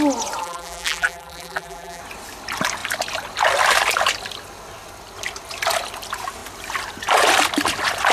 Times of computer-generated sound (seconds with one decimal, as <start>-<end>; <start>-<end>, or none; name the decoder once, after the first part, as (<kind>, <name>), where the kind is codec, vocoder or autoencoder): 0.4-2.0 (vocoder, BigVGAN v2)